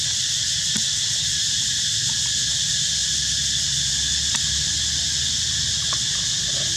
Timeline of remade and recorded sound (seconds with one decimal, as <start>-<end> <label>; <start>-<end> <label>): 0.0-3.0 recorded; 3.0-5.0 remade; 5.0-6.8 recorded